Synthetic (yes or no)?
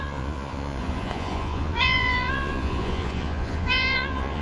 yes